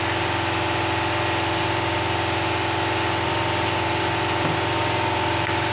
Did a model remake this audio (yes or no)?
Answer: no